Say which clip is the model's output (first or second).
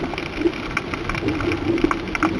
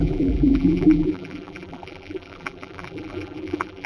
second